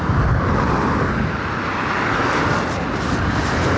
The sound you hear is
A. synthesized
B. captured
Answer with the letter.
B